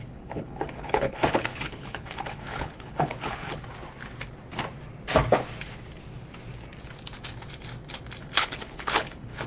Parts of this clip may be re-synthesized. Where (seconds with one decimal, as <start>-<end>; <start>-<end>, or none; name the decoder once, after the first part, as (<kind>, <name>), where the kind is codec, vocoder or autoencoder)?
0.0-3.6 (codec, HILCodec); 8.2-9.5